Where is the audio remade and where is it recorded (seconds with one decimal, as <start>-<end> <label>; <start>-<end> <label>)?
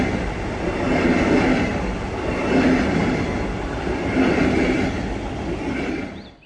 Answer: 0.0-6.5 recorded